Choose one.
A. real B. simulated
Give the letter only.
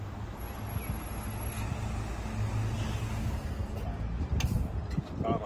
A